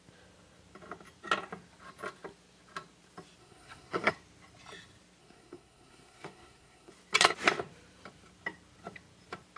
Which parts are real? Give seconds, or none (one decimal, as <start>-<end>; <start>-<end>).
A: 0.0-3.4; 4.1-5.2; 6.9-9.6